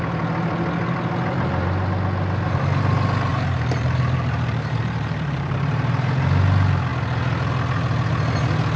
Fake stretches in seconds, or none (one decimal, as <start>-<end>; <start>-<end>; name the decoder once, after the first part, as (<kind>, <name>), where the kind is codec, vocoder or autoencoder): 3.3-5.5 (vocoder, BigVGAN v2)